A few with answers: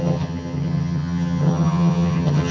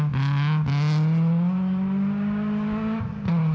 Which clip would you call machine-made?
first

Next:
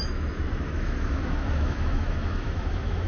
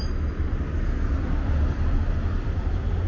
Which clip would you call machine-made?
first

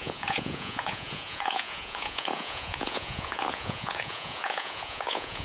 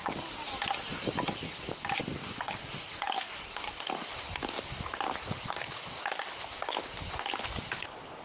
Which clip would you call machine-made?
first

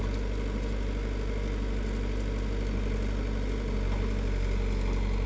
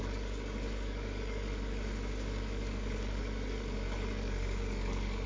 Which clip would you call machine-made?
second